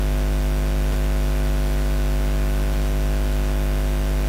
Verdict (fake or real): real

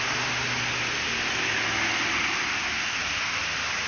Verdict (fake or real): real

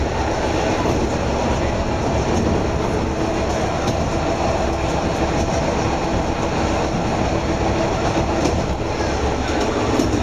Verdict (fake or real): real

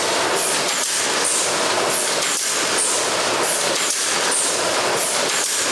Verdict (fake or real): fake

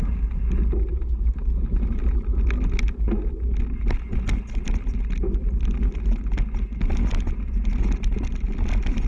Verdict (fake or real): real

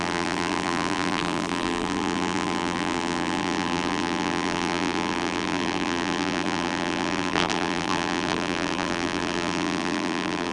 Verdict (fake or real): fake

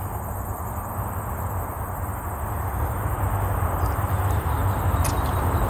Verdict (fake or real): real